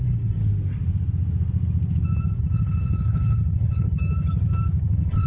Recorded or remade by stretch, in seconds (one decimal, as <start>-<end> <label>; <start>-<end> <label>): 0.0-0.4 remade; 0.4-2.4 recorded; 2.4-4.0 remade; 4.0-4.8 recorded; 4.8-5.3 remade